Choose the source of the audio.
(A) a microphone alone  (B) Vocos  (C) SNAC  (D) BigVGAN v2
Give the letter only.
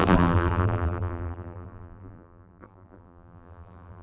D